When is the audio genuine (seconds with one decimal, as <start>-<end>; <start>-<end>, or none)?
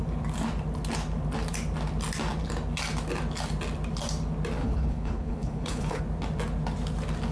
0.0-4.6; 6.0-7.3